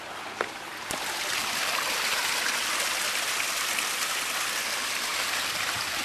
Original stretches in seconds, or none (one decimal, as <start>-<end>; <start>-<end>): 0.0-5.1